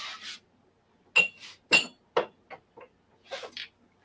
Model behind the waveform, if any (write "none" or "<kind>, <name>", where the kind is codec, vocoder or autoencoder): none